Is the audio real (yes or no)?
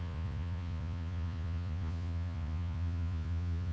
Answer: no